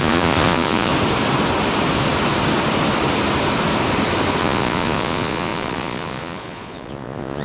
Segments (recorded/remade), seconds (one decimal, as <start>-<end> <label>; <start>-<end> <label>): 0.0-0.9 remade; 0.9-4.4 recorded; 4.4-7.4 remade

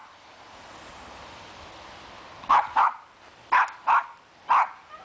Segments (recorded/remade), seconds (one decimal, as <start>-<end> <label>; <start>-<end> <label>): 0.0-5.0 recorded

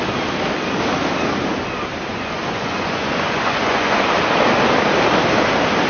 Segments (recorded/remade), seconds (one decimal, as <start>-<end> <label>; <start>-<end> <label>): 0.0-2.1 recorded; 2.1-4.0 remade; 4.0-5.9 recorded

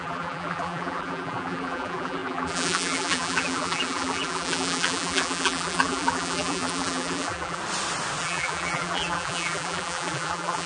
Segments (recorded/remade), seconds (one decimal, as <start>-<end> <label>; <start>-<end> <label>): 0.0-7.6 remade; 7.6-8.2 recorded; 8.2-10.7 remade

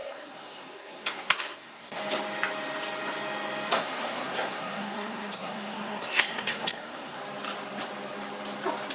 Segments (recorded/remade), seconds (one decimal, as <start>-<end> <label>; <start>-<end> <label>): 0.0-2.0 remade; 2.0-3.7 recorded; 3.7-7.2 remade; 7.2-8.9 recorded

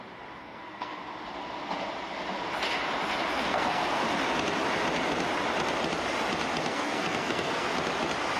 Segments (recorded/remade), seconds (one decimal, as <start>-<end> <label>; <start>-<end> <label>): 0.0-0.4 recorded; 0.4-1.0 remade; 1.0-3.3 recorded; 3.3-4.0 remade; 4.0-6.6 recorded; 6.6-7.7 remade; 7.7-8.4 recorded

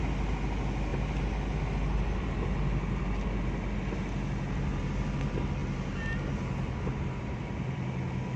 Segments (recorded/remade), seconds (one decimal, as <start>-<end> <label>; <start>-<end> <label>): 0.0-8.4 recorded

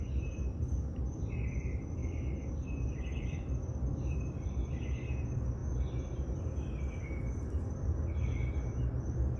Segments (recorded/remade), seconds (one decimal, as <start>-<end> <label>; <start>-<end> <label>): 0.0-2.0 remade; 2.0-2.5 recorded; 2.5-5.6 remade; 5.6-6.4 recorded; 6.4-9.4 remade